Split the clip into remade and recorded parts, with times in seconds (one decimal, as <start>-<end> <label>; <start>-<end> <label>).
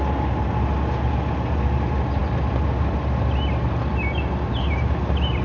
0.0-5.4 recorded